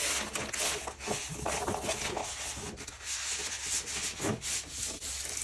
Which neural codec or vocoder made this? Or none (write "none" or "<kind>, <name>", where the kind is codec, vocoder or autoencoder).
none